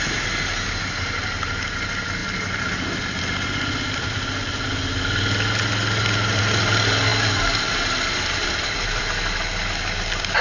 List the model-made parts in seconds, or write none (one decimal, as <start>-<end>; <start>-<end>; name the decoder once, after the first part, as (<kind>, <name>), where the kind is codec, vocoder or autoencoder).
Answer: none